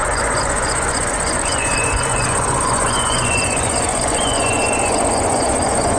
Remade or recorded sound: remade